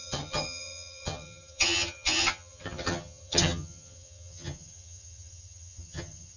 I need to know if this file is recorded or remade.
remade